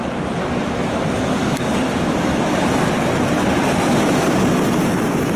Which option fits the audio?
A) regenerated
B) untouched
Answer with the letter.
B